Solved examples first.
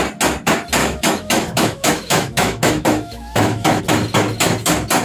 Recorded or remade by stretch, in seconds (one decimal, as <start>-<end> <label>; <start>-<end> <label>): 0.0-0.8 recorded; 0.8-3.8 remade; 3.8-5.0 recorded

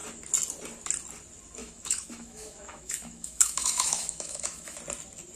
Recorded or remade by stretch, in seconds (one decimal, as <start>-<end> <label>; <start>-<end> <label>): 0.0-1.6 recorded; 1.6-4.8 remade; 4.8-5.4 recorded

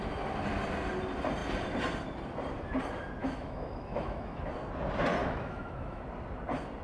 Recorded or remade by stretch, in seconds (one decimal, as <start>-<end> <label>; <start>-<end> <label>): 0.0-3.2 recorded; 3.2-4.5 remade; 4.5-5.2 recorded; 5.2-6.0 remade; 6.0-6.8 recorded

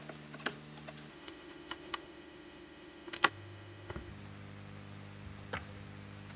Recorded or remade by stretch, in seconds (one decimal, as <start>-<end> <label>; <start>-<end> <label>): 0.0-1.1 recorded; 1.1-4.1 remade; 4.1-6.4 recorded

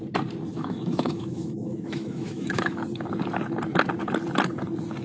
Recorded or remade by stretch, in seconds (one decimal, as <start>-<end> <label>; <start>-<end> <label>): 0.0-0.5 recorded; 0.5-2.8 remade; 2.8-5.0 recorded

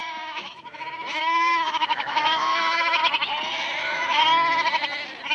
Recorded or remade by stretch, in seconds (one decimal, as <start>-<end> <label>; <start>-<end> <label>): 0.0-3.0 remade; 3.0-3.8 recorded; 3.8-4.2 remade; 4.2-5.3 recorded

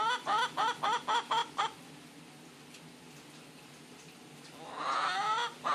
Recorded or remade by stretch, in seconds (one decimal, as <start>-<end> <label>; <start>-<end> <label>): 0.0-5.7 recorded